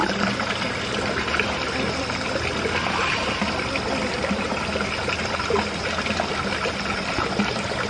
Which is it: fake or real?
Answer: real